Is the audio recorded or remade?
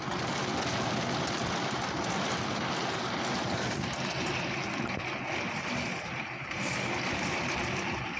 recorded